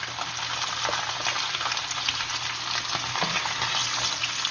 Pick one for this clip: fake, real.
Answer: real